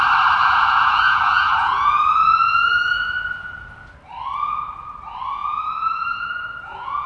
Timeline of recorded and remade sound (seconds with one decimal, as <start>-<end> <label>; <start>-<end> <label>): 0.0-0.4 recorded; 0.4-3.5 remade; 3.5-5.4 recorded; 5.4-7.1 remade